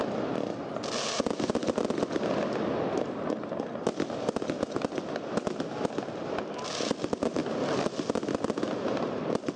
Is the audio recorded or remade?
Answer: recorded